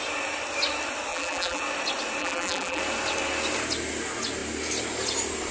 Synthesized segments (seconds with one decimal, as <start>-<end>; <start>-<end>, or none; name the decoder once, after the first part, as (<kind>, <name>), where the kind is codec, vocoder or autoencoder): 1.1-1.6 (vocoder, BigVGAN v2); 2.2-2.8